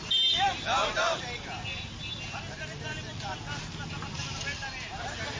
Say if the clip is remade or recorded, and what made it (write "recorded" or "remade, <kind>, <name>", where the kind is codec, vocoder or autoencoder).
recorded